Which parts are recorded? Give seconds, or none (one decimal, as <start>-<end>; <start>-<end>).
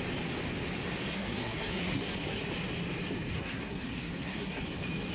0.0-1.1; 2.5-3.3; 4.6-5.1